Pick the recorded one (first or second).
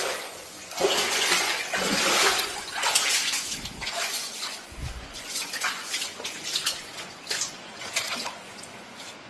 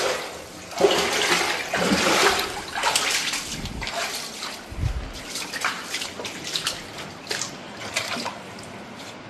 second